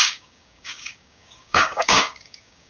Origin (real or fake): fake